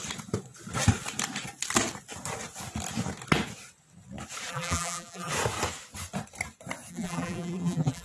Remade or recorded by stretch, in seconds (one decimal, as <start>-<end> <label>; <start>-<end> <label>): 0.0-4.5 recorded; 4.5-5.3 remade; 5.3-6.9 recorded; 6.9-8.0 remade